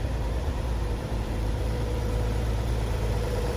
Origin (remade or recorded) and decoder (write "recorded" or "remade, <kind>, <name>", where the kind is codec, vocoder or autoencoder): remade, vocoder, BigVGAN v2